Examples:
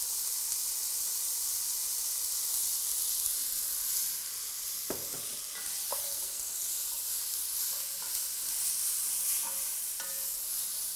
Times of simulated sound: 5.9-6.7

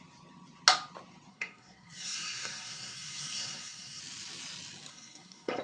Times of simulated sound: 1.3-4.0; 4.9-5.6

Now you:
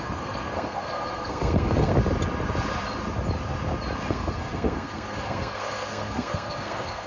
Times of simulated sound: 0.0-1.9; 4.1-7.1

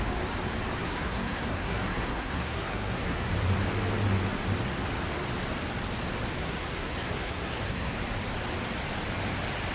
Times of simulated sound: 0.8-3.3; 6.4-7.9

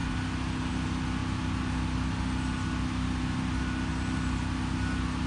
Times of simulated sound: none

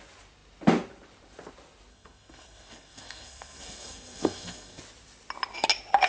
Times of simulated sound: 1.9-4.8